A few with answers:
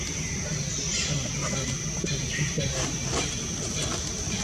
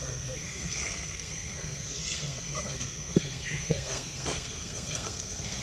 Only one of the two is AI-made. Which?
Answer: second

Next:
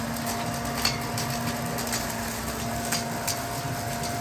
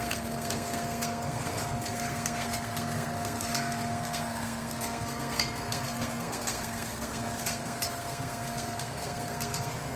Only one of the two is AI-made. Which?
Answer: second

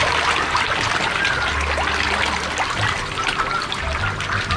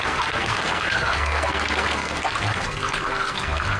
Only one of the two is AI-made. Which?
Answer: second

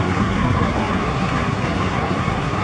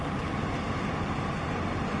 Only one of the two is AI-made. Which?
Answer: first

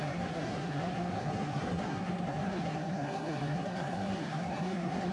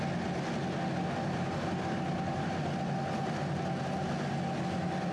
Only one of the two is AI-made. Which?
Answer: first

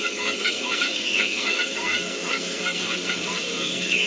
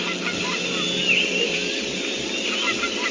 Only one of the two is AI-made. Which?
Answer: first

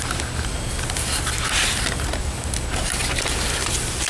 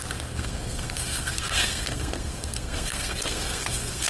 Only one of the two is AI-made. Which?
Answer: second